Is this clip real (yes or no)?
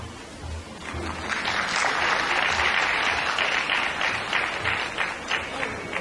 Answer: yes